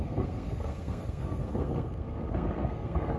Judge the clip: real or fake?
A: fake